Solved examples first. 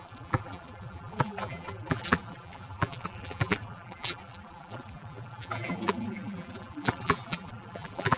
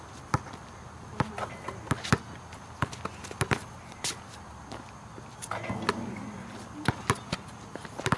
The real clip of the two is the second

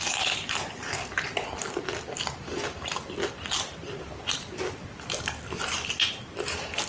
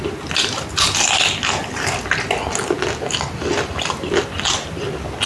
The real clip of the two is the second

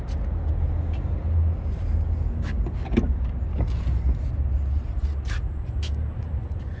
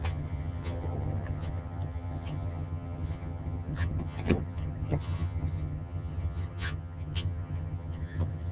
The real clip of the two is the first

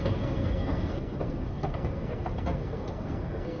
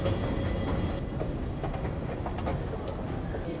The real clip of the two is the second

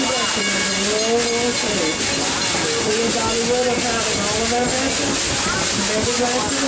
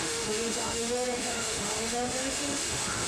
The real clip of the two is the first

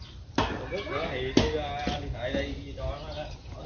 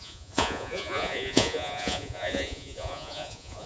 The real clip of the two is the first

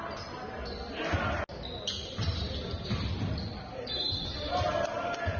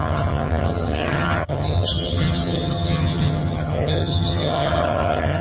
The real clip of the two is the first